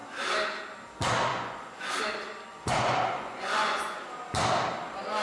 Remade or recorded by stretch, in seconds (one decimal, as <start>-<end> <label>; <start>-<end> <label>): 0.0-1.3 recorded; 1.3-2.0 remade; 2.0-2.5 recorded; 2.5-4.0 remade; 4.0-5.2 recorded